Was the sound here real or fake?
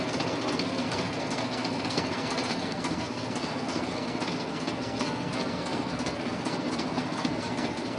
fake